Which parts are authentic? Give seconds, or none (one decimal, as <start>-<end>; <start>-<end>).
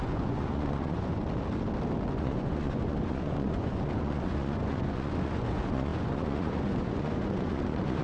1.2-2.2